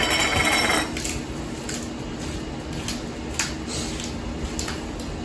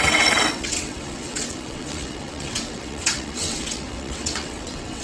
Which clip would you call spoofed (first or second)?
second